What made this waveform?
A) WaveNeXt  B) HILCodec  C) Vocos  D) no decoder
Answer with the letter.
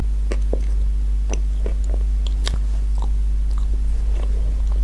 D